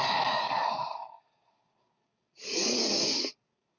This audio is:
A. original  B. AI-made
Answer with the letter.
B